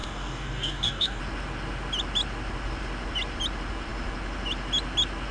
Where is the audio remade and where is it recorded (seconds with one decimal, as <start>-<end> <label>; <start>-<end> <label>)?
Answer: 0.0-1.2 remade; 1.2-5.3 recorded

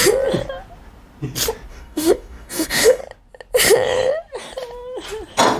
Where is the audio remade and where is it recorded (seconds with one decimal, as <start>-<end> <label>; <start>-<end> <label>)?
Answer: 0.0-1.7 recorded; 1.7-3.0 remade; 3.0-5.6 recorded

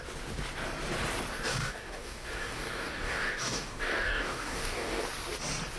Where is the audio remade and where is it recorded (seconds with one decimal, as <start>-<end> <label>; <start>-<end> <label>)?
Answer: 0.0-1.5 recorded; 1.5-5.0 remade; 5.0-5.8 recorded

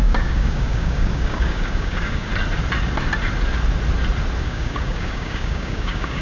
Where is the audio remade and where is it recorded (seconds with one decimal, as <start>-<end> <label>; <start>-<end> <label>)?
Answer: 0.0-2.3 remade; 2.3-4.4 recorded; 4.4-6.2 remade

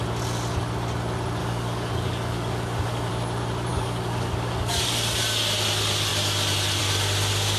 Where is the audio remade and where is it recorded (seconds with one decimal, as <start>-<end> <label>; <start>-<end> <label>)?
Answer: 0.0-1.4 recorded; 1.4-3.1 remade; 3.1-3.7 recorded; 3.7-4.8 remade; 4.8-7.6 recorded

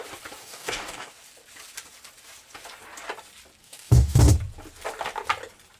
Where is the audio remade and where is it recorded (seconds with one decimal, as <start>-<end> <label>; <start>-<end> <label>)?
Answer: 0.0-0.4 recorded; 0.4-1.1 remade; 1.1-3.6 recorded; 3.6-4.3 remade; 4.3-5.8 recorded